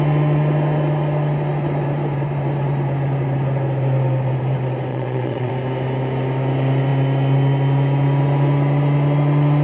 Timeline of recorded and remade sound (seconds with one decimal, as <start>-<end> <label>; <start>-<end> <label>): 0.0-4.9 recorded; 4.9-5.5 remade; 5.5-9.6 recorded